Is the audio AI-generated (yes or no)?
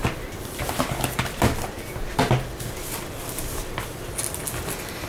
no